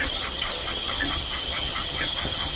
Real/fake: fake